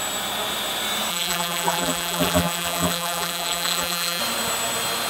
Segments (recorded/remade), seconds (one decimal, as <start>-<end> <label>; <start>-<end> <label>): 0.0-1.1 recorded; 1.1-4.2 remade; 4.2-5.1 recorded